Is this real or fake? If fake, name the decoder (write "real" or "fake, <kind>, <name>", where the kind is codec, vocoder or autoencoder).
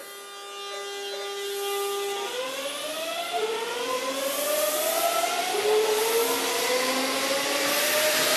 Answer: real